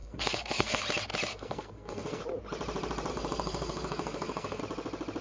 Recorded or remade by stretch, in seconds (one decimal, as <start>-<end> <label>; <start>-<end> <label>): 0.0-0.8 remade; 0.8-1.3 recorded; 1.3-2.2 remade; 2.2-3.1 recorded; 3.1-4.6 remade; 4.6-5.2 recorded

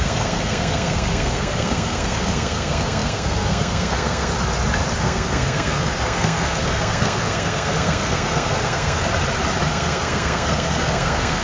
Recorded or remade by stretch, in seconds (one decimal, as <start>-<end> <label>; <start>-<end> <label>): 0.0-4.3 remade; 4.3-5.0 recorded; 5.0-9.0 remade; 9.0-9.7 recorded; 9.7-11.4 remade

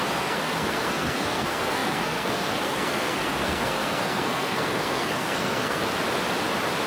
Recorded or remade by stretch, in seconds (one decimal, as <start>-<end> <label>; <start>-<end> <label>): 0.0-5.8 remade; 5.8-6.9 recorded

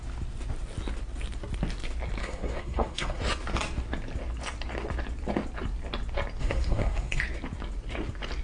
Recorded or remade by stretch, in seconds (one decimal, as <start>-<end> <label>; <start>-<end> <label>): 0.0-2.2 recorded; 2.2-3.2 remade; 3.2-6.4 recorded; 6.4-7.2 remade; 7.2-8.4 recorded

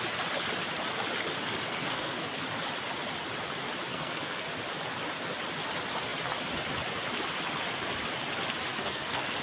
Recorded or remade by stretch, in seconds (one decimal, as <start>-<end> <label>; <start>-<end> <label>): 0.0-1.7 recorded; 1.7-2.3 remade; 2.3-3.9 recorded; 3.9-4.4 remade; 4.4-8.7 recorded; 8.7-9.4 remade

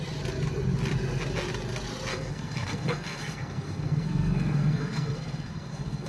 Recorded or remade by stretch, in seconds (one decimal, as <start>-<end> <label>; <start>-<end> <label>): 0.0-2.1 recorded; 2.1-6.1 remade